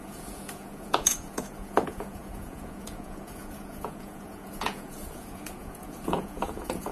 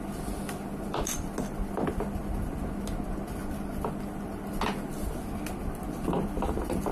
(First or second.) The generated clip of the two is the first